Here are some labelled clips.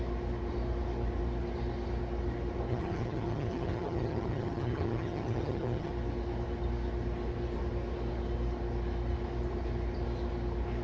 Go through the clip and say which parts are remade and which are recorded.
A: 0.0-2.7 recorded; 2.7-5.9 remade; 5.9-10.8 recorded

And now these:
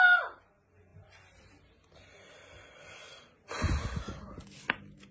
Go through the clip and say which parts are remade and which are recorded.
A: 0.0-5.1 recorded

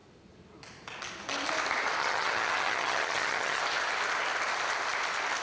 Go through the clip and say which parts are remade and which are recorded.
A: 0.0-2.0 recorded; 2.0-3.6 remade; 3.6-5.4 recorded

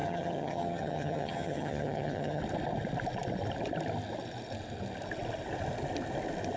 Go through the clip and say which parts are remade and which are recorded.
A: 0.0-2.4 remade; 2.4-6.6 recorded

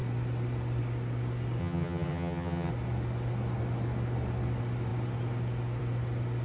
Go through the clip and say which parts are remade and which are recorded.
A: 0.0-1.6 recorded; 1.6-2.7 remade; 2.7-6.4 recorded

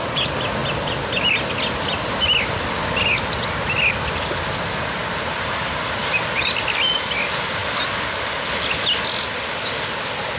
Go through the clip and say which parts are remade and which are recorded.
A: 0.0-10.4 recorded